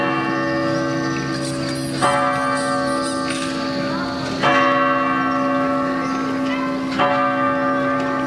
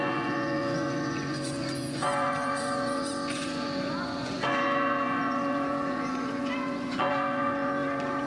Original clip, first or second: first